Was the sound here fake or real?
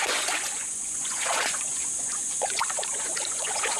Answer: fake